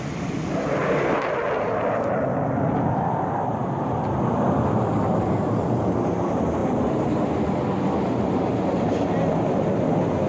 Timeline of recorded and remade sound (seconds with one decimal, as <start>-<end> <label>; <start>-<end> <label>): 0.0-10.3 remade